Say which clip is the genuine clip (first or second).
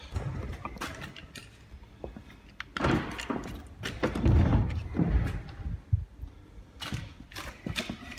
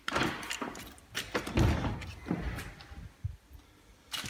second